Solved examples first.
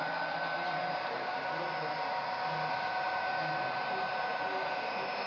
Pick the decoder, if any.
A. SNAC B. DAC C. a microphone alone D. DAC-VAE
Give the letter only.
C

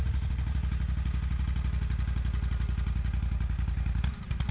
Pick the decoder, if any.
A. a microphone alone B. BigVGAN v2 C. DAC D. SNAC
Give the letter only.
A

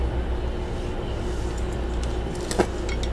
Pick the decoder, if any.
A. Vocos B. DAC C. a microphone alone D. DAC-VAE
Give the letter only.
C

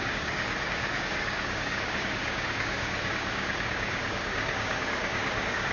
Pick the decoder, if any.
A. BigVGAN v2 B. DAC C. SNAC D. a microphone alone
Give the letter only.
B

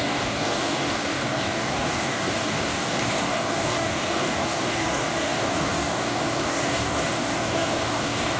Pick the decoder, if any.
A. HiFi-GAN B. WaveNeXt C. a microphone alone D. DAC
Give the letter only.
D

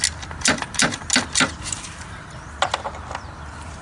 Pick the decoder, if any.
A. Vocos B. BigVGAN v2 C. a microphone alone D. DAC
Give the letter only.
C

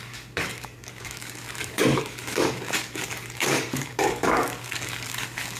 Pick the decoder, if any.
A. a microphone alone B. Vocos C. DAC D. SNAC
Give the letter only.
C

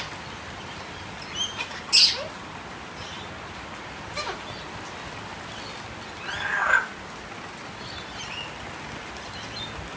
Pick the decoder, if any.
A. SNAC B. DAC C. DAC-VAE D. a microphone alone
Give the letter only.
D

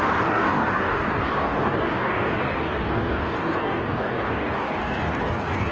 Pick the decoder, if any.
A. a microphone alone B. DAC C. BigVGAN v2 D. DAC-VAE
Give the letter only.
B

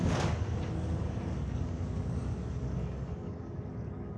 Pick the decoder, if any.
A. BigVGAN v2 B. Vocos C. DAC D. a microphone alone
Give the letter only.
C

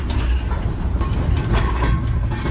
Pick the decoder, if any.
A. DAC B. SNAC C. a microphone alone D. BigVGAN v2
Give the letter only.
C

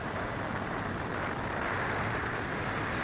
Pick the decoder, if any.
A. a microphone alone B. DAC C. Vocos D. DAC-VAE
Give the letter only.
A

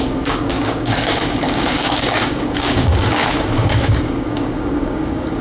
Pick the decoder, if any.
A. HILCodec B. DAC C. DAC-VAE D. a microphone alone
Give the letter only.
B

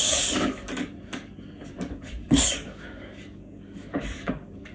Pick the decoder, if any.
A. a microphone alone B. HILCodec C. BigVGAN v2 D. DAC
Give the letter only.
D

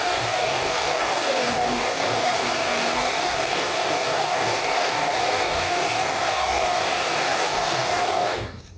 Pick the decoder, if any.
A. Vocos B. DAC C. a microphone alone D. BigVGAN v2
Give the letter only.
B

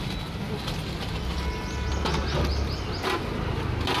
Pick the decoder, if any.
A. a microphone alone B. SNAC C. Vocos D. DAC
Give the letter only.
A